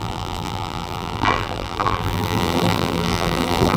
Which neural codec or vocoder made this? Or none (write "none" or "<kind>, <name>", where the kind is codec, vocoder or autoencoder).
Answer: vocoder, BigVGAN v2